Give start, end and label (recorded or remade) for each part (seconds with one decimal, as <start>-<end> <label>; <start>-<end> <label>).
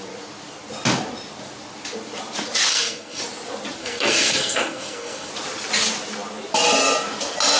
0.0-2.7 recorded; 2.7-3.2 remade; 3.2-3.8 recorded; 3.8-5.3 remade; 5.3-7.6 recorded